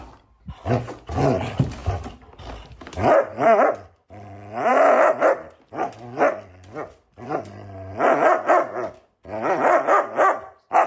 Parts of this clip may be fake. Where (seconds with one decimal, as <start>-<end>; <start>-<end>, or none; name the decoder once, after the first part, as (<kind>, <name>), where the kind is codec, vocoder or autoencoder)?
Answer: none